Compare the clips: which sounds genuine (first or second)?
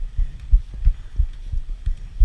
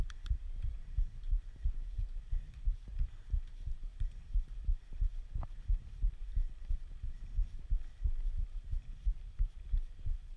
first